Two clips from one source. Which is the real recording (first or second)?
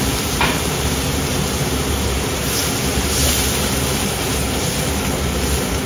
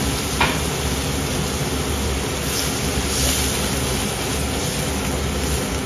second